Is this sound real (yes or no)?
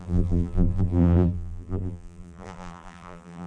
no